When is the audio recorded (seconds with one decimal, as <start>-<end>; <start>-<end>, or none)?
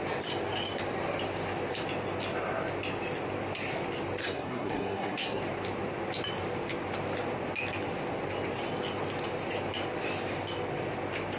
0.0-4.2; 5.4-11.4